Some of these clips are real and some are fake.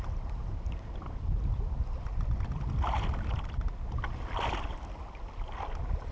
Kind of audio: real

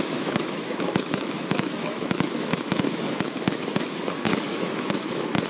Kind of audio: fake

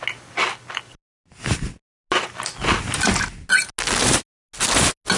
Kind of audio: real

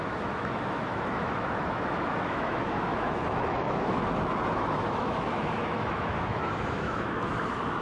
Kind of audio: fake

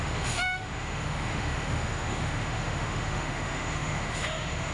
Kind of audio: fake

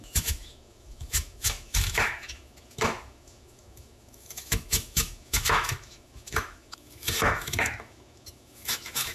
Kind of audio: fake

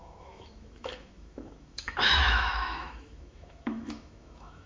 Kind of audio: fake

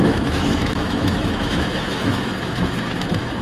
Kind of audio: fake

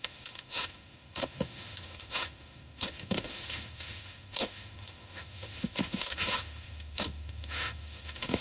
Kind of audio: fake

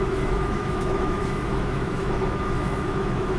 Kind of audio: fake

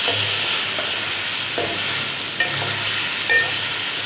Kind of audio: real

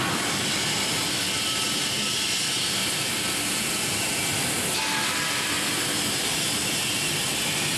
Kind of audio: real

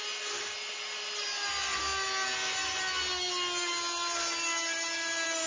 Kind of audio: real